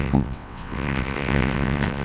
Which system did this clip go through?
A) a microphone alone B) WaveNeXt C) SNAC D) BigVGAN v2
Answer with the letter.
B